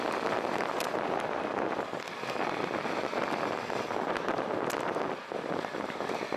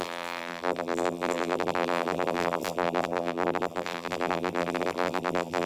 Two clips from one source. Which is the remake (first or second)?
second